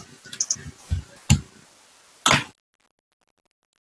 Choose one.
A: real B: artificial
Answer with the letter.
A